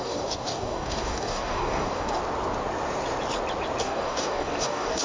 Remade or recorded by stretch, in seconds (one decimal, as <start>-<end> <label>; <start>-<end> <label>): 0.0-2.2 remade; 2.2-3.8 recorded; 3.8-5.0 remade